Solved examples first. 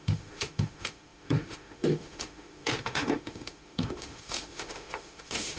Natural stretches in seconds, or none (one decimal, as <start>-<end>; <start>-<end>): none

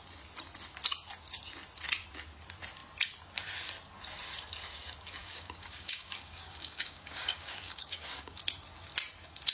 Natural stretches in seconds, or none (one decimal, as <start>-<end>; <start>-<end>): 0.0-5.2; 8.4-9.5

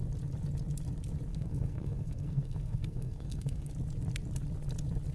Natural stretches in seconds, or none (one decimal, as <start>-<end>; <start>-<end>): 0.0-1.3; 3.7-5.1